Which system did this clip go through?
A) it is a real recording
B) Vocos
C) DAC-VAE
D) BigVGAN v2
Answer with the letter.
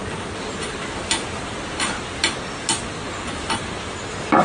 A